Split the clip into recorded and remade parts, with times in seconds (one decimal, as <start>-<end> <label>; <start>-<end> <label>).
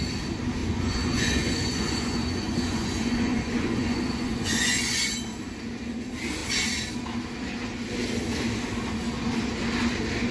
0.0-0.6 recorded; 0.6-5.2 remade; 5.2-10.3 recorded